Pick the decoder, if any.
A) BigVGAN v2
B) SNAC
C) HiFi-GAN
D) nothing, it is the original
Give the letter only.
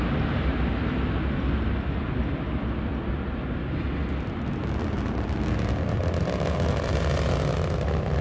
D